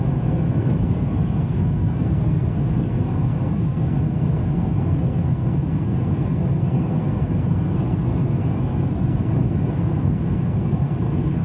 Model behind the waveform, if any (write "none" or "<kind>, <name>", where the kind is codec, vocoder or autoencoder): codec, SNAC